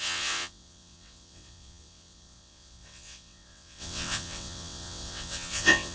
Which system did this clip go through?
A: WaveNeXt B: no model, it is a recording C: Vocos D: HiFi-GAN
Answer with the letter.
A